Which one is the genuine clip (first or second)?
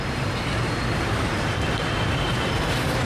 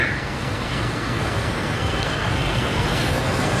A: first